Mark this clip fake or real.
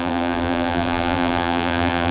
fake